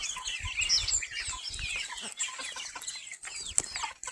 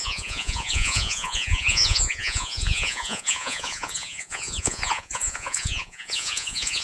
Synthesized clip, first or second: second